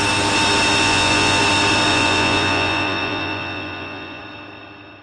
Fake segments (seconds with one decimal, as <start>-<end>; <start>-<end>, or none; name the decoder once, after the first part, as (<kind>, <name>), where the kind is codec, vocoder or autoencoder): 0.8-1.4 (vocoder, Vocos); 1.9-4.2